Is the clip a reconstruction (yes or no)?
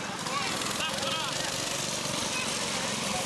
no